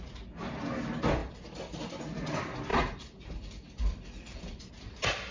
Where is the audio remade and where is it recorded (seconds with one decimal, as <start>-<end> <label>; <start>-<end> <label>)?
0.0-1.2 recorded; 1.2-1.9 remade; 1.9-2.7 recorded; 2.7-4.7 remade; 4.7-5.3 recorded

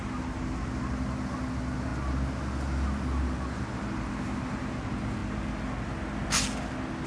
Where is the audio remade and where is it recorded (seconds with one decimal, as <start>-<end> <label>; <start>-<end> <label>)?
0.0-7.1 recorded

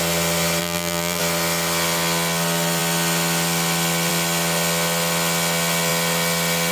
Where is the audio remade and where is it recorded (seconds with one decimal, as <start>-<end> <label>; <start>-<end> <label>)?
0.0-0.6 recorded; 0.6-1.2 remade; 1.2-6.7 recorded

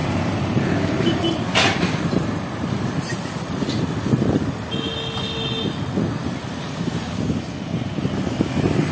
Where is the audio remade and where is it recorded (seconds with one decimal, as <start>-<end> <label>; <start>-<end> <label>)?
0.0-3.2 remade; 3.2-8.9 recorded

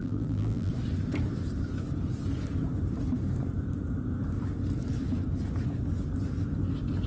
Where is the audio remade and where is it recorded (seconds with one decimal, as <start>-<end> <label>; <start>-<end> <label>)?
0.0-0.7 remade; 0.7-7.1 recorded

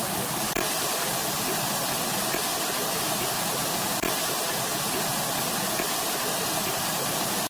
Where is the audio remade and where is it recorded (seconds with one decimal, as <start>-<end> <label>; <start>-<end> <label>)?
0.0-1.2 remade; 1.2-3.4 recorded; 3.4-4.7 remade; 4.7-5.6 recorded; 5.6-7.5 remade

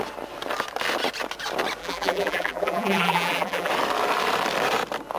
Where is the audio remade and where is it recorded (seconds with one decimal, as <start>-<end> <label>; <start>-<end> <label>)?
0.0-1.8 recorded; 1.8-3.7 remade; 3.7-5.2 recorded

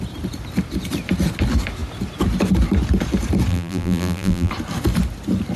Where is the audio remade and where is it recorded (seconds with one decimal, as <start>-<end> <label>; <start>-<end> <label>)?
0.0-3.5 recorded; 3.5-4.5 remade; 4.5-5.6 recorded